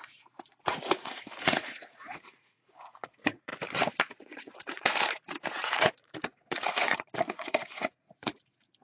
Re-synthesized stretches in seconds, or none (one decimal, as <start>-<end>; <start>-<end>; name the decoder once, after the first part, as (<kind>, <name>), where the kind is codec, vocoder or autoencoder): 0.0-3.5 (vocoder, Vocos); 4.2-8.8